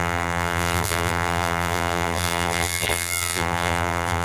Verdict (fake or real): fake